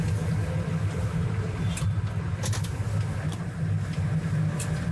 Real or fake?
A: real